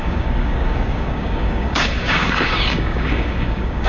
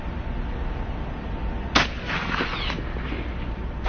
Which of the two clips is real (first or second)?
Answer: second